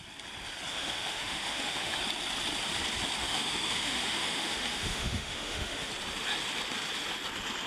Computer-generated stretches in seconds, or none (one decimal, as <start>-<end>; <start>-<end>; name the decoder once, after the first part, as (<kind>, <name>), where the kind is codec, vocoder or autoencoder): 0.7-2.0 (autoencoder, DAC-VAE); 3.2-5.9